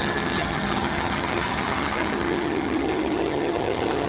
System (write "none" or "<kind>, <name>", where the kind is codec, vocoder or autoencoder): vocoder, HiFi-GAN